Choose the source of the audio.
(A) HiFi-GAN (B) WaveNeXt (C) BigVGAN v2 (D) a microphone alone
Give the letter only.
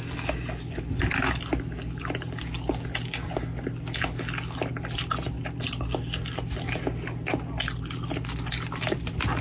D